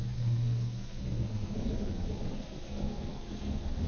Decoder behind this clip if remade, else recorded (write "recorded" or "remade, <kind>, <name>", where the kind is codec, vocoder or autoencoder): remade, codec, SNAC